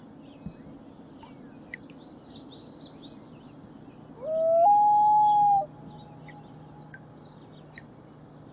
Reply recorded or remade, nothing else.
recorded